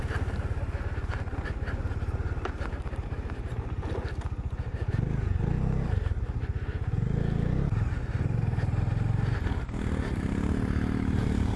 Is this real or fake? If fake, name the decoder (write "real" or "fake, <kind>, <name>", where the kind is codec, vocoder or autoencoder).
real